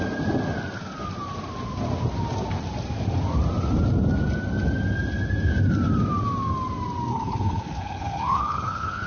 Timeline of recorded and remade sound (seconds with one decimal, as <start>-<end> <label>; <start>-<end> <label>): 0.0-7.1 recorded; 7.1-9.1 remade